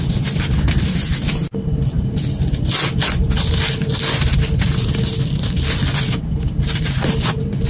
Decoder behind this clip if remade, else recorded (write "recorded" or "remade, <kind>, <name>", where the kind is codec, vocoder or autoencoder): recorded